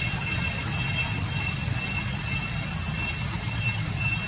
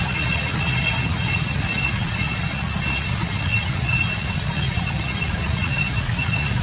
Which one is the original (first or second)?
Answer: first